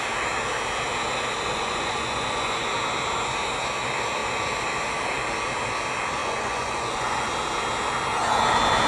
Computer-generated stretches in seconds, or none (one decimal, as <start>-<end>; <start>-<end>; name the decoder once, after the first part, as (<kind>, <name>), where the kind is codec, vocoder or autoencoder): 1.5-2.7 (vocoder, Vocos); 6.2-7.3